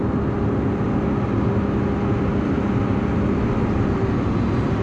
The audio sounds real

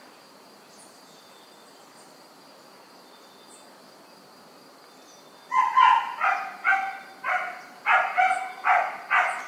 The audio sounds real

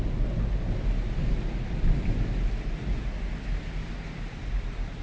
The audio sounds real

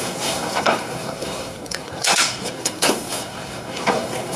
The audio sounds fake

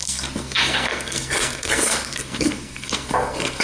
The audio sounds fake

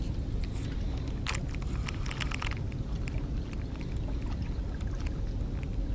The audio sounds real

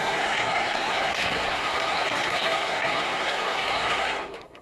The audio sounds fake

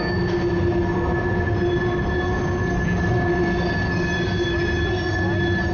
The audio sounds real